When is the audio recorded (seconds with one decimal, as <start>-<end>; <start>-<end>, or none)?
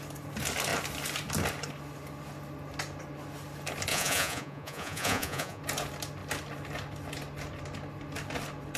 0.0-3.9; 5.6-8.8